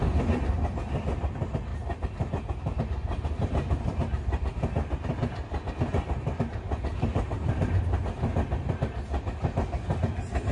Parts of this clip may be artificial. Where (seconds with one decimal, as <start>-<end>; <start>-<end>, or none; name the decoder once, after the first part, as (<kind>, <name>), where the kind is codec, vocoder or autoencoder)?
6.9-8.0 (vocoder, BigVGAN v2)